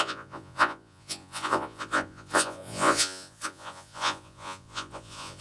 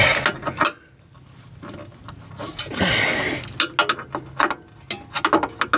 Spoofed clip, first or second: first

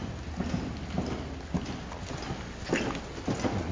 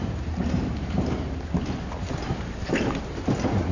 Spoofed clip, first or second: second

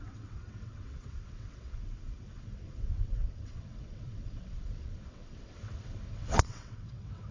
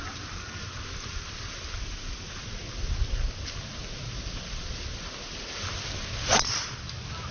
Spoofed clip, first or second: first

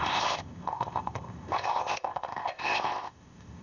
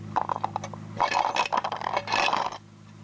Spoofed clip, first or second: first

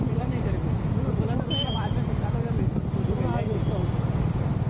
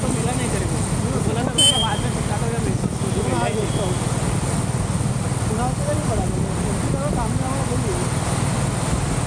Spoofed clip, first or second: first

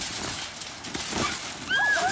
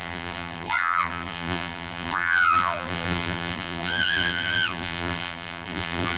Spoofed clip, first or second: second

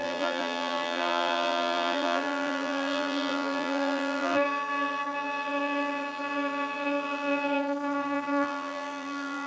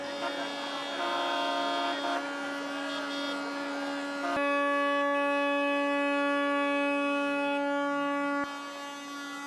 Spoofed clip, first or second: first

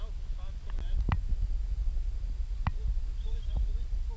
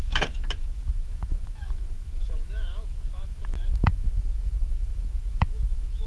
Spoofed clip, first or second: second